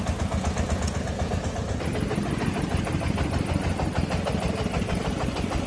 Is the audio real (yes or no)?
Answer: yes